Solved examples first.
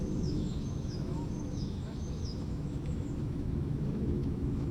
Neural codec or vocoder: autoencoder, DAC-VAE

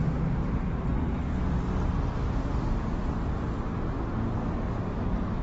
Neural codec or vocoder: none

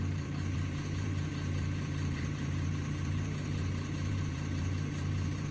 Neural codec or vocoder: vocoder, BigVGAN v2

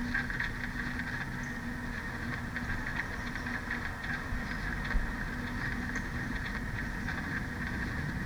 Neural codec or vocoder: none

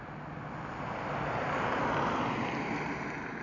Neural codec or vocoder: none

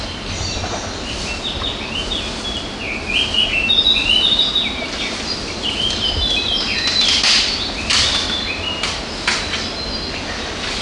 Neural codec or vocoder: none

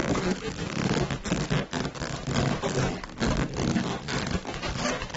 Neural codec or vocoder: none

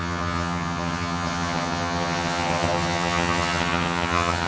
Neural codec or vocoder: vocoder, HiFi-GAN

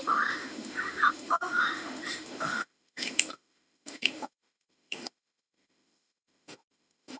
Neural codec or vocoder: autoencoder, DAC-VAE